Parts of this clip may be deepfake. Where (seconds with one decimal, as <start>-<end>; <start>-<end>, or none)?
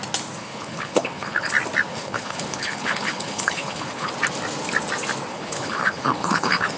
0.4-1.5; 1.9-4.1; 5.3-6.8